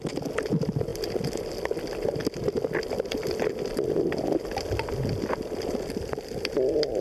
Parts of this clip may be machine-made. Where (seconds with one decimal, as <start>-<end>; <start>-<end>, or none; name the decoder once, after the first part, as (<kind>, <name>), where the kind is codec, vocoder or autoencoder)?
none